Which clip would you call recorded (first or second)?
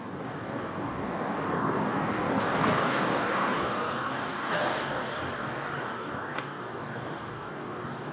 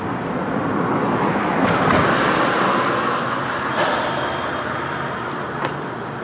second